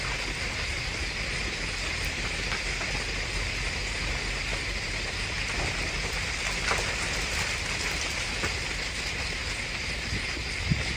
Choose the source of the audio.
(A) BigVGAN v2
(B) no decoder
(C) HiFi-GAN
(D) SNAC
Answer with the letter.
B